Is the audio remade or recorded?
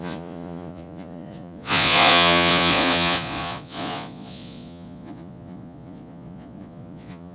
remade